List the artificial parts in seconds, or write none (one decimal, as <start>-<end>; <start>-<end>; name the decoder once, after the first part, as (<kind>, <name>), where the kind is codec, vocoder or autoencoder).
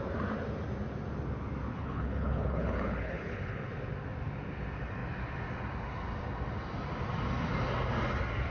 1.7-3.7 (codec, HILCodec)